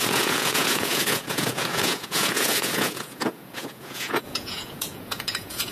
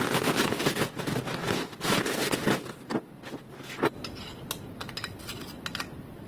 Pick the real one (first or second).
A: second